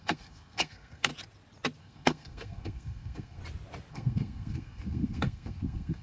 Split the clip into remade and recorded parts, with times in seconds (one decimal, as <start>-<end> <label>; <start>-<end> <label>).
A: 0.0-1.1 remade; 1.1-1.8 recorded; 1.8-3.4 remade; 3.4-3.9 recorded; 3.9-6.0 remade